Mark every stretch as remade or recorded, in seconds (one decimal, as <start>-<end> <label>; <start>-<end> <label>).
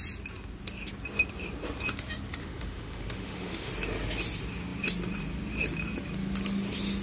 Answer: 0.0-2.4 recorded; 2.4-3.7 remade; 3.7-7.0 recorded